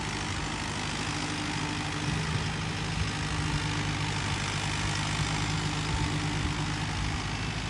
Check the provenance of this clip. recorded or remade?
recorded